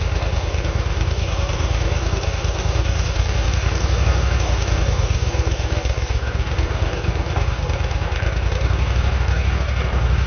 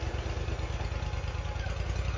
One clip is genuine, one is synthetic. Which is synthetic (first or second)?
first